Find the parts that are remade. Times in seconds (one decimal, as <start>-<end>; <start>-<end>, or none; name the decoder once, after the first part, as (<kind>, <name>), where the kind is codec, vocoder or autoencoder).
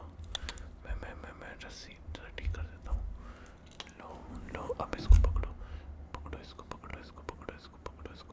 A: 4.1-5.1 (vocoder, BigVGAN v2); 6.9-8.3